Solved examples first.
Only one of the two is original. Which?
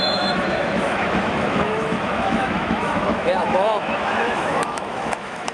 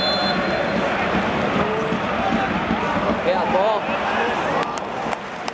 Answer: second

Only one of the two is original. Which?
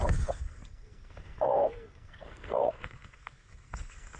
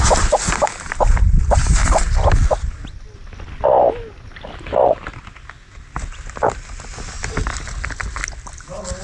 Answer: second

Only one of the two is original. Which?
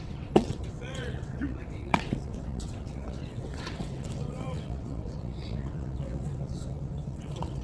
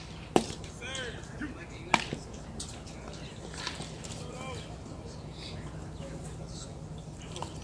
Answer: second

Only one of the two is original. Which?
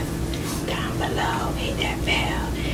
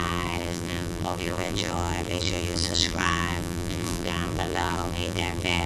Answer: first